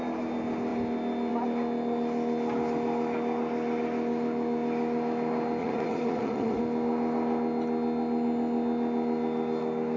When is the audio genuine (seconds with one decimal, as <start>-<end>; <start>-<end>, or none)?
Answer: 0.0-5.6; 6.6-10.0